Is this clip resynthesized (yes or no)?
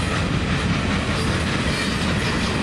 no